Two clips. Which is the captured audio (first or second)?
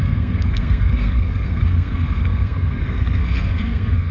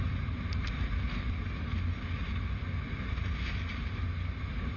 second